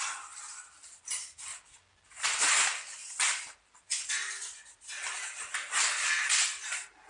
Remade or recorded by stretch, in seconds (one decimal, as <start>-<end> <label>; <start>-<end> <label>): 0.0-7.1 recorded